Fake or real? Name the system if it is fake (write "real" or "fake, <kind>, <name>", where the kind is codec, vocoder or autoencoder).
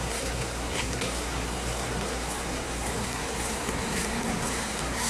fake, codec, SNAC